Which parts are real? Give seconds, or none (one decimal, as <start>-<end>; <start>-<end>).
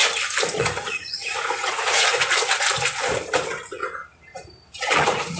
0.0-0.6; 2.1-3.3; 3.8-4.7